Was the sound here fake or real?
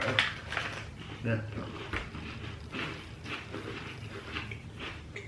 real